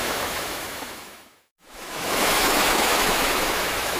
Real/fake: fake